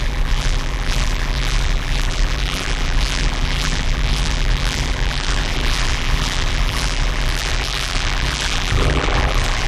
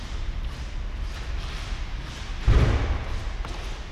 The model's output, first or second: first